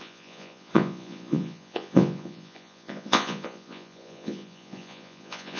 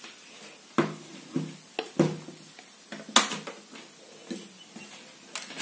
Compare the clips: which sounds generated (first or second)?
first